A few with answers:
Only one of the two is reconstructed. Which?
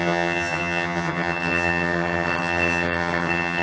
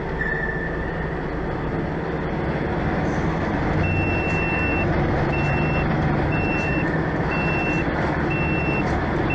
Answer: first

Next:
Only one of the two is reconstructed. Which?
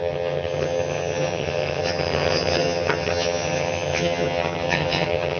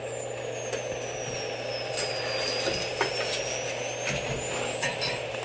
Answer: first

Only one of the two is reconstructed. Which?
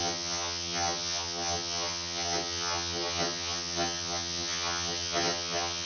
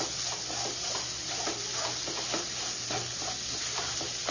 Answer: first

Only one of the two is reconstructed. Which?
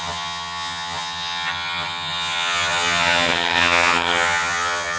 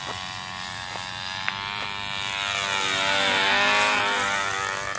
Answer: first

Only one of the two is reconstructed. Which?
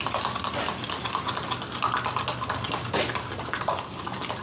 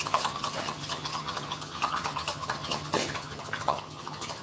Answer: second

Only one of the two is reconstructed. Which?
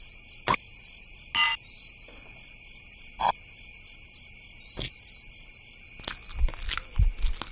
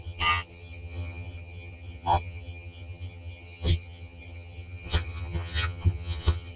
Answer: second